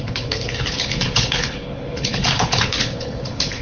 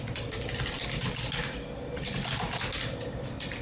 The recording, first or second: second